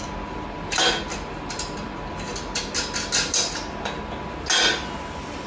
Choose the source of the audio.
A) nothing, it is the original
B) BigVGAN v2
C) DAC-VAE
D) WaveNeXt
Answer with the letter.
A